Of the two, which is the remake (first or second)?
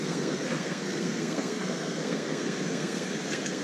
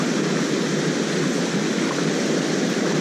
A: first